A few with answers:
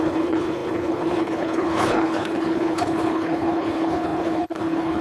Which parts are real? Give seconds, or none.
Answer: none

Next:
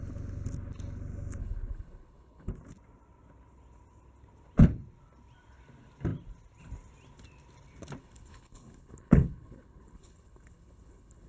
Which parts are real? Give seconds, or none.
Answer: 0.0-1.4; 2.5-8.0

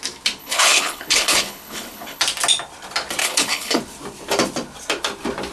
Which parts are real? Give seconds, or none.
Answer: 0.0-0.4; 2.2-3.2; 3.8-5.5

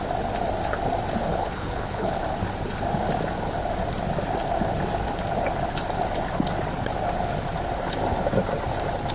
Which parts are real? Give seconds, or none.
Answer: 0.0-1.3; 2.2-9.1